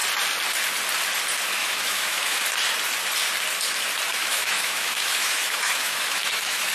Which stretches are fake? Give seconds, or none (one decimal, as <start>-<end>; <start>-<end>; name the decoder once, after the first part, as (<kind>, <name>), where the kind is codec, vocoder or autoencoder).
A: 1.6-2.4 (autoencoder, DAC-VAE); 4.1-6.7